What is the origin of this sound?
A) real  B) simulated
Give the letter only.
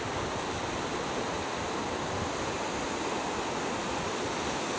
A